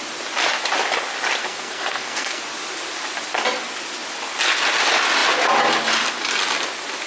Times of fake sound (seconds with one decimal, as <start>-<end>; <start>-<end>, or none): 1.4-2.4